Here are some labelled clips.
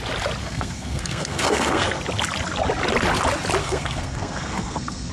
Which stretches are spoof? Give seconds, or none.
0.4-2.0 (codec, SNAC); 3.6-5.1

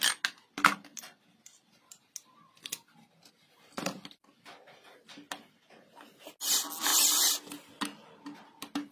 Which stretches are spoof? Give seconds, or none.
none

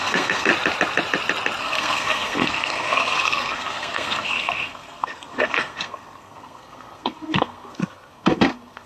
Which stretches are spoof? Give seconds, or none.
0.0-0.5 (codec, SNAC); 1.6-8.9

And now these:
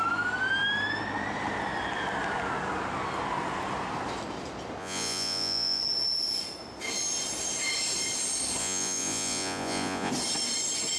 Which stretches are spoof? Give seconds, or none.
4.8-5.8 (vocoder, Vocos); 8.6-10.1

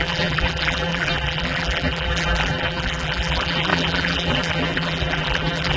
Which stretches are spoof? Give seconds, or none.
0.0-5.8 (vocoder, BigVGAN v2)

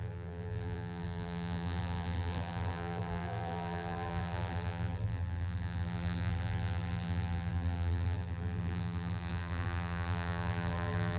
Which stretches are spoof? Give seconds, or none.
0.0-11.2 (vocoder, BigVGAN v2)